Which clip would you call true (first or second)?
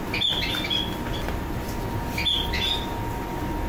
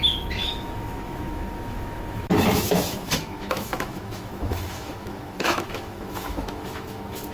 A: first